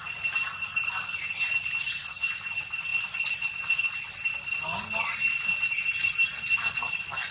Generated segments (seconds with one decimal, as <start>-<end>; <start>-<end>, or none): none